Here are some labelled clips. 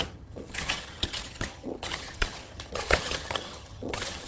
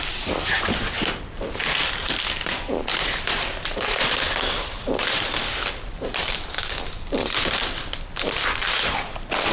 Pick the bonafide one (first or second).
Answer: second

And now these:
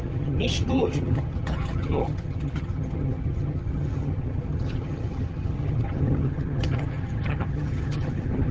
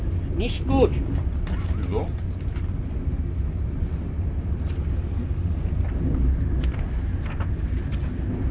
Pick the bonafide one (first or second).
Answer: second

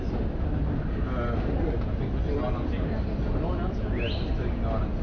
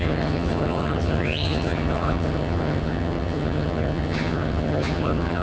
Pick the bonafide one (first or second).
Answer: first